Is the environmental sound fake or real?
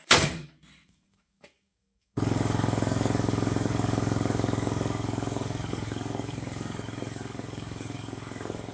fake